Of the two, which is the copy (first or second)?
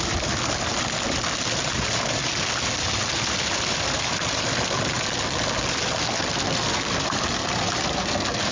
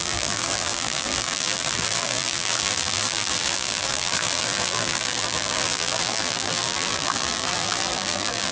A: second